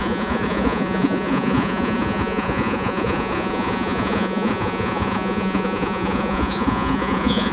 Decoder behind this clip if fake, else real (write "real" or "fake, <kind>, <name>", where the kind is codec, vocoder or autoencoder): fake, vocoder, Vocos